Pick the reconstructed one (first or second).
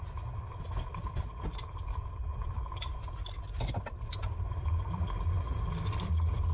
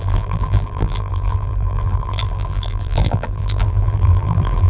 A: second